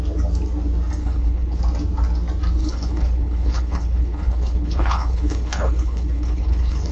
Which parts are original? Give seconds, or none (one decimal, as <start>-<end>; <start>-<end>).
0.0-1.0; 1.6-2.6